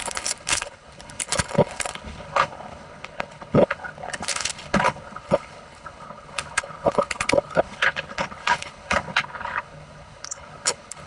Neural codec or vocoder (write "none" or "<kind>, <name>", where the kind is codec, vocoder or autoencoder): codec, HILCodec